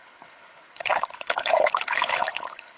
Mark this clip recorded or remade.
remade